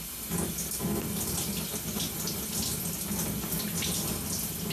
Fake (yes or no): no